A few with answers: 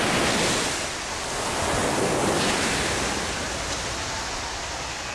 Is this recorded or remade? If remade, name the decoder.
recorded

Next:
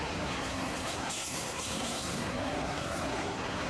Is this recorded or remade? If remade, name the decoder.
remade, codec, SNAC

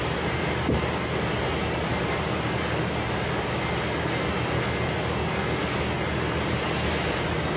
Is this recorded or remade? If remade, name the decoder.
recorded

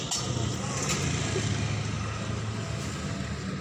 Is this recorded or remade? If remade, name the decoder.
recorded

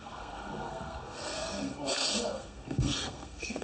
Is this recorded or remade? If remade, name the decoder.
remade, codec, SNAC